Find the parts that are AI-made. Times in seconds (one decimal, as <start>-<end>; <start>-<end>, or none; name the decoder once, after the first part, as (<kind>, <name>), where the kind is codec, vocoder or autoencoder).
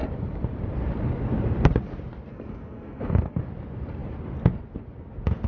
2.3-3.4 (codec, SNAC)